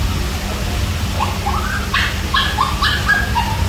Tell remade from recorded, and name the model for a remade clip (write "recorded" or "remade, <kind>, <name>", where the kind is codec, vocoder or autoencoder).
recorded